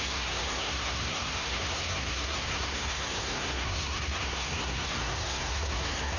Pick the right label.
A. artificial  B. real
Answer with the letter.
A